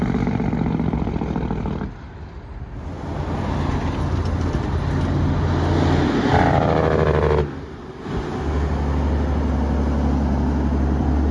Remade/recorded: recorded